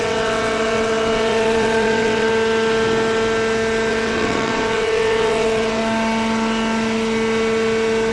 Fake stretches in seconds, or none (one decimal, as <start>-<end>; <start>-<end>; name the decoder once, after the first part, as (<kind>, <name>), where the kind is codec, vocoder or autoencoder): 0.0-2.3 (vocoder, WaveNeXt); 3.9-5.8